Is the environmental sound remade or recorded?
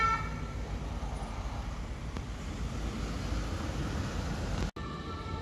recorded